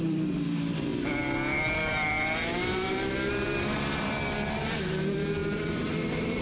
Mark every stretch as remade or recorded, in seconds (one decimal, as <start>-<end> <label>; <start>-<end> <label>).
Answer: 0.0-6.4 remade